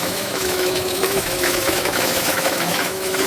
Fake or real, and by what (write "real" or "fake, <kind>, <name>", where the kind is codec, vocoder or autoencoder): fake, autoencoder, DAC-VAE